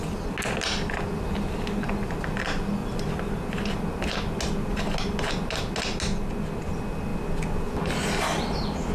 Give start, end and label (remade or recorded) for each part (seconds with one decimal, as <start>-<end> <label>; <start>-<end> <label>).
0.0-8.9 recorded

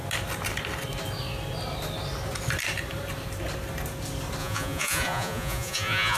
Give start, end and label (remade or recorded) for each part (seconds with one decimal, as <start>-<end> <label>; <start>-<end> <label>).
0.0-4.4 recorded; 4.4-6.2 remade

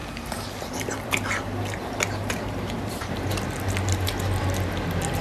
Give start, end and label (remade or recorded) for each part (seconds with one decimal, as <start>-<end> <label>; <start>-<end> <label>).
0.0-5.2 recorded

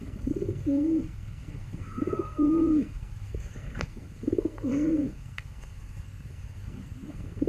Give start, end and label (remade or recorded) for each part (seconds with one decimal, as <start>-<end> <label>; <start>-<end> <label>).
0.0-7.5 remade

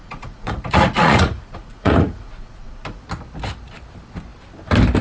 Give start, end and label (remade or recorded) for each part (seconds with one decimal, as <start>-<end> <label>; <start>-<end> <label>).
0.0-3.0 remade; 3.0-5.0 recorded

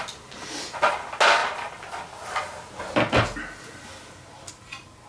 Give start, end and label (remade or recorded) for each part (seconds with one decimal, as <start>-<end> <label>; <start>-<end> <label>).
0.0-5.1 recorded